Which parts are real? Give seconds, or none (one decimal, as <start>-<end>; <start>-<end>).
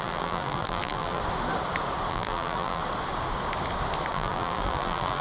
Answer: 1.2-2.1; 2.8-4.1